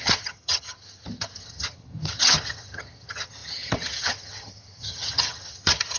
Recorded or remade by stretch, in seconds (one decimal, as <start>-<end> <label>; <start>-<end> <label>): 0.0-6.0 remade